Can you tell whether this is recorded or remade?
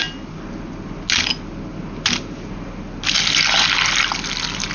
recorded